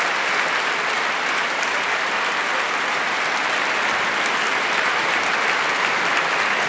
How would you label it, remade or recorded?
recorded